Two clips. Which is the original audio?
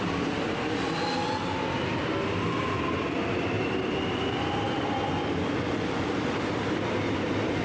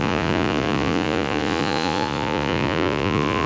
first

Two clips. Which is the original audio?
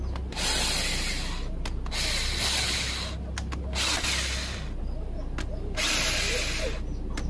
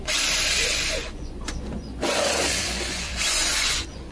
first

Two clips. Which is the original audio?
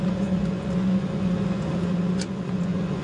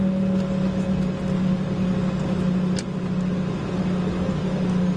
second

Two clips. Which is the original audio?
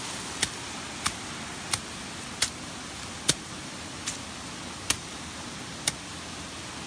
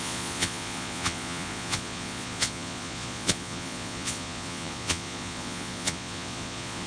first